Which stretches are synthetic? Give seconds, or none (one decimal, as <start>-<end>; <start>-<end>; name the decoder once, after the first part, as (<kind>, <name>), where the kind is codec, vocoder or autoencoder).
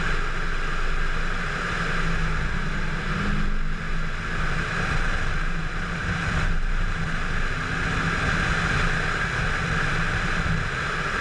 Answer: 5.3-7.2 (vocoder, BigVGAN v2)